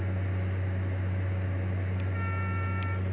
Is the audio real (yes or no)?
yes